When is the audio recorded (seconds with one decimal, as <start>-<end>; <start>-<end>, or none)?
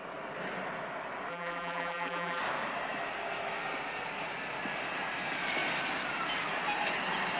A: 0.0-1.3; 2.4-7.4